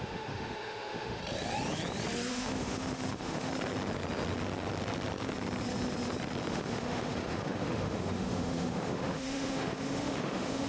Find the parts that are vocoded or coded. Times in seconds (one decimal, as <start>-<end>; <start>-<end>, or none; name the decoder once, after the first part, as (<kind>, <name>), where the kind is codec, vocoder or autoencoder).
0.0-1.2 (autoencoder, DAC-VAE); 2.3-3.5; 6.5-10.7